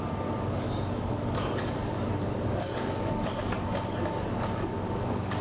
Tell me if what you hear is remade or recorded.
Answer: remade